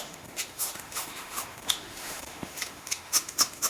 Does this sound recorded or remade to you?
remade